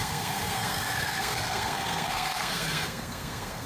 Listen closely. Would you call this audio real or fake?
fake